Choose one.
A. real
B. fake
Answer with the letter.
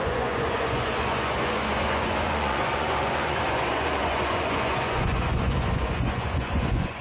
B